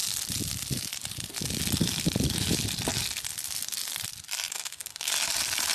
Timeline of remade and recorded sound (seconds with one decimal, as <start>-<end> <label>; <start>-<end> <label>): 0.0-4.5 recorded; 4.5-5.1 remade; 5.1-5.7 recorded